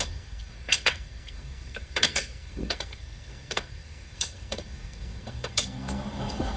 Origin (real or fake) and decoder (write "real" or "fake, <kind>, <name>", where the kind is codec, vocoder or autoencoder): fake, codec, SNAC